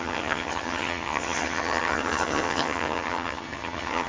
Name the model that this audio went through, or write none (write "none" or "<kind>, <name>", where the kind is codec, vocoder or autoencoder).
vocoder, HiFi-GAN